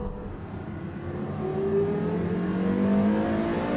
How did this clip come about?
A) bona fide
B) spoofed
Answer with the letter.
A